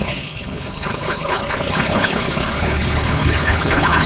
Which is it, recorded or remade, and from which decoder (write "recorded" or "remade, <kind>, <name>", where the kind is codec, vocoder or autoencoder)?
remade, codec, HILCodec